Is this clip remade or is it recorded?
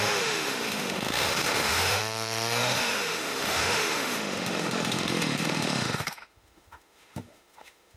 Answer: remade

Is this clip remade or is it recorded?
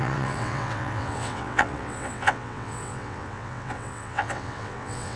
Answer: remade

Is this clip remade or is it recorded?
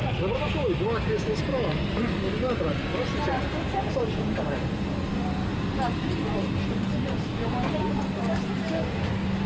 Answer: recorded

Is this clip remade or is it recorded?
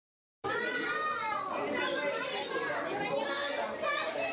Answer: recorded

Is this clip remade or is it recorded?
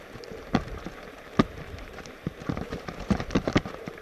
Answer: remade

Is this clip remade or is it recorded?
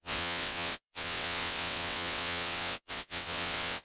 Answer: remade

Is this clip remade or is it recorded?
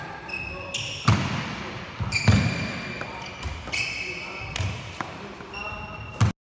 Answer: recorded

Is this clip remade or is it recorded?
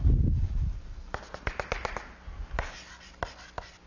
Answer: recorded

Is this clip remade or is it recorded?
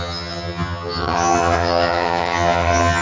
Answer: remade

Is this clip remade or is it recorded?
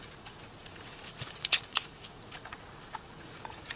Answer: remade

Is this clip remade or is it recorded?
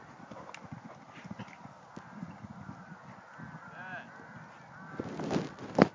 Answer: recorded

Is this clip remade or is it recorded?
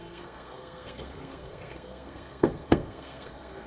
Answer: remade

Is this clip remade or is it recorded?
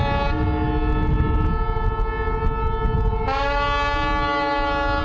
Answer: recorded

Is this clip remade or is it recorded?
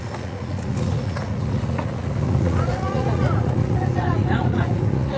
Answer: remade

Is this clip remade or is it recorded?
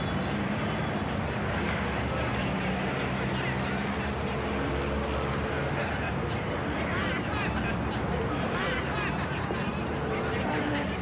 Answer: recorded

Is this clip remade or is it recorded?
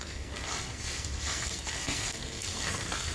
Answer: remade